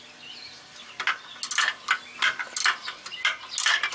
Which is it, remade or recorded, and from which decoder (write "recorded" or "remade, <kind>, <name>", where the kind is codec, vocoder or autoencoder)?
recorded